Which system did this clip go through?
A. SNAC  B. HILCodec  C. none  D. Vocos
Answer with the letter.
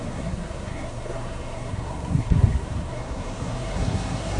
A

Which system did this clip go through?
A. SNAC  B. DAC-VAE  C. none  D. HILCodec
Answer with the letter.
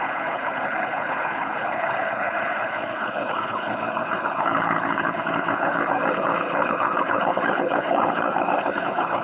D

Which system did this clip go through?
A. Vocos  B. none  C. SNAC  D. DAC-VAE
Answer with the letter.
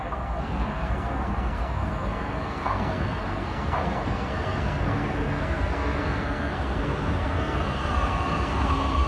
C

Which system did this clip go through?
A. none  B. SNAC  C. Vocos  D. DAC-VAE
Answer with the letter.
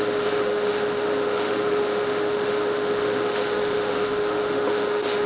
D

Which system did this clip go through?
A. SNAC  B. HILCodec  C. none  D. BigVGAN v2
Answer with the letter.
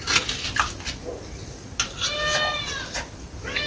C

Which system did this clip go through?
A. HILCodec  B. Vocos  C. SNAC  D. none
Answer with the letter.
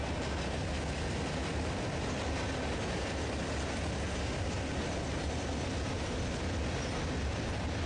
D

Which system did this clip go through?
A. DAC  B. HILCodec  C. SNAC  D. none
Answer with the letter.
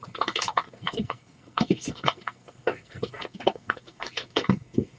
C